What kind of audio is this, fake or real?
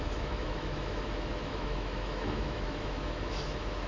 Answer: fake